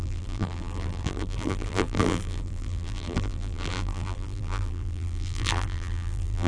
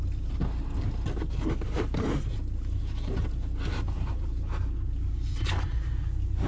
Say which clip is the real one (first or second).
second